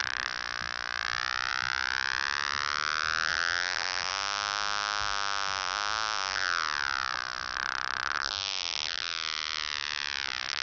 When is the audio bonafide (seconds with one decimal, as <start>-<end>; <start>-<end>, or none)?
0.0-10.6